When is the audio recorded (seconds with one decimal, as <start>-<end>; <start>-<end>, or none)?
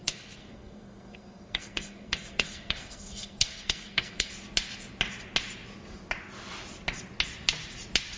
4.3-8.2